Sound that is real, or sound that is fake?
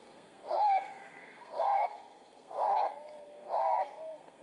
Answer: fake